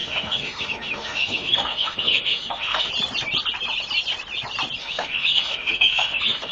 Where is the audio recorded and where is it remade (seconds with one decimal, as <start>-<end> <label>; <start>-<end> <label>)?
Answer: 0.0-2.9 remade; 2.9-4.8 recorded; 4.8-6.5 remade